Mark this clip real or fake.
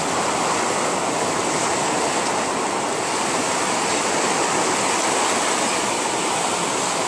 real